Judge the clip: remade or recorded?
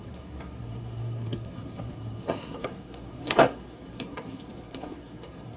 remade